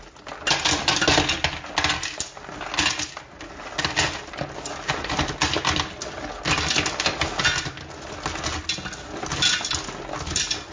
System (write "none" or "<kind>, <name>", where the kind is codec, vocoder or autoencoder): none